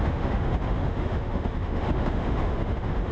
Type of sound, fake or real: fake